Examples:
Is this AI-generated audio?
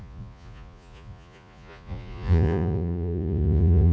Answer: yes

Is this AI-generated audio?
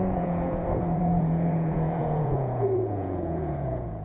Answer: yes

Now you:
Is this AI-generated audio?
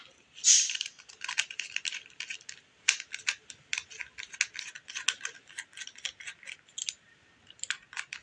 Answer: no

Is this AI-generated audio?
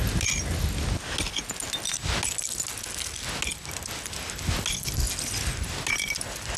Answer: no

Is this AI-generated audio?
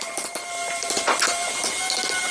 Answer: no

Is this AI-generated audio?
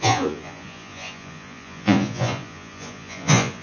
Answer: yes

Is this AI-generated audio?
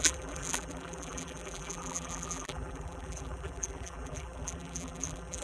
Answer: yes